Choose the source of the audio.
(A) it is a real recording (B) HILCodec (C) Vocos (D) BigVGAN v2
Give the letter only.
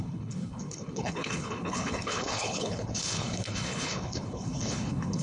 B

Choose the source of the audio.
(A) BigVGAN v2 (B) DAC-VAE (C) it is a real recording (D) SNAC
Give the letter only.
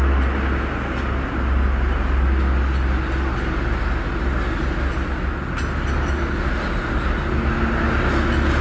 C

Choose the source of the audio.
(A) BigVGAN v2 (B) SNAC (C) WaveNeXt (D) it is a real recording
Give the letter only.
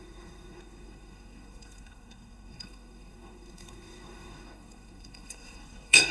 B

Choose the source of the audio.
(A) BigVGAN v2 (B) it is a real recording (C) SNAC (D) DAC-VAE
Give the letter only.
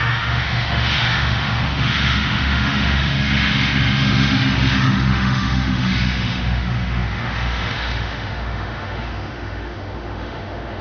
D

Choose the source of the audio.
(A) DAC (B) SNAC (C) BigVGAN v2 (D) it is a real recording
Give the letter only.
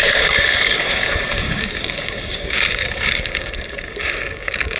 A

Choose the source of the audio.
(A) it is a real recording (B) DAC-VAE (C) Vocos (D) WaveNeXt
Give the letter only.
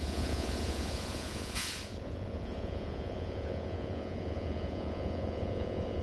C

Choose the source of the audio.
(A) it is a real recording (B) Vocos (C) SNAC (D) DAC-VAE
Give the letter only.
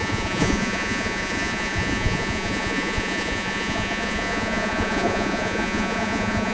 B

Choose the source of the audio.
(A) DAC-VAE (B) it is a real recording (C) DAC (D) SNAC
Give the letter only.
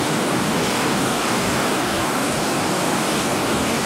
C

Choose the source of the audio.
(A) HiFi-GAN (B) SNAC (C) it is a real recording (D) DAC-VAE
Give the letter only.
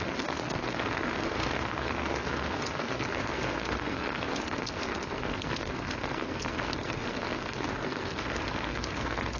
B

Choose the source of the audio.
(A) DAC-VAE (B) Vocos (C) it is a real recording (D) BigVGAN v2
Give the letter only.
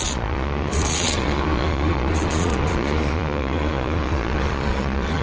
B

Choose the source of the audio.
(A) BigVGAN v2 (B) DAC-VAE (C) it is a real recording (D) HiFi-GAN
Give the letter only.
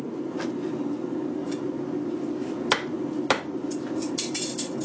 C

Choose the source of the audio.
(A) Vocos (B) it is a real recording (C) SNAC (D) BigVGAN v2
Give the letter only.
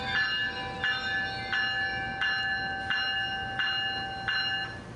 B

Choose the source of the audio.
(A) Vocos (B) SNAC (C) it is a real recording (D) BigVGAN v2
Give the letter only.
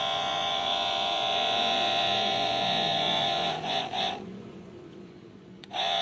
A